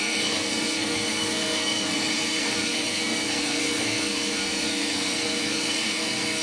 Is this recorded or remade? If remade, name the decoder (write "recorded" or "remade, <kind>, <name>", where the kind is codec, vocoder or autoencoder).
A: remade, codec, SNAC